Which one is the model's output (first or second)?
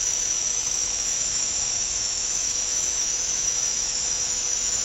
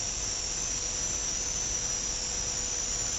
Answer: first